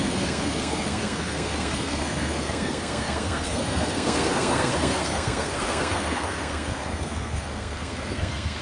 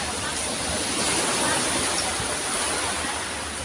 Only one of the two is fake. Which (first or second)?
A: first